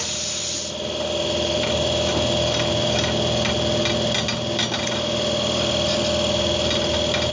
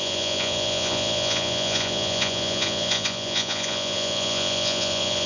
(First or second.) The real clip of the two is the first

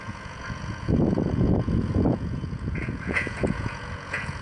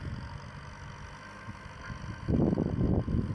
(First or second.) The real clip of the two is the second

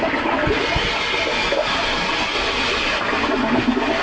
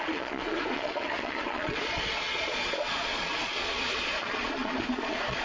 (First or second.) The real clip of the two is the first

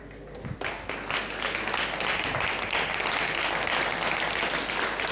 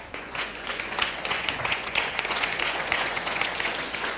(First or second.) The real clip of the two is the first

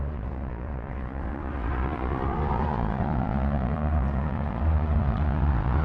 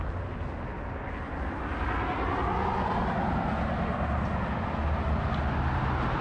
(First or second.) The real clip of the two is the second